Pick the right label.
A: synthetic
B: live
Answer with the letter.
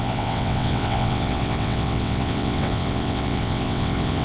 A